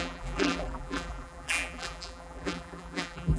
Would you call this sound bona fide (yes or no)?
no